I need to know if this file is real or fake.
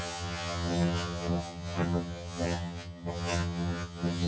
fake